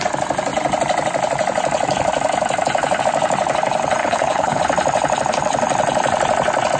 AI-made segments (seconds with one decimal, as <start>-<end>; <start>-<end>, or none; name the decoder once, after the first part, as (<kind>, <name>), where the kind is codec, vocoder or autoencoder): 4.0-4.6 (codec, HILCodec)